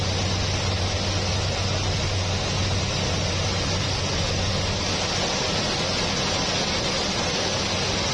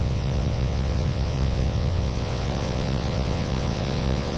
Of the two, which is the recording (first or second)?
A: first